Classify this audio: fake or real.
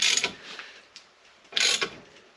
fake